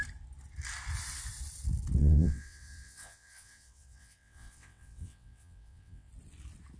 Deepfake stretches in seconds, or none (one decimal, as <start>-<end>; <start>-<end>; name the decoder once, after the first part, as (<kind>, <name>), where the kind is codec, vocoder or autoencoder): 2.0-6.1 (vocoder, WaveNeXt)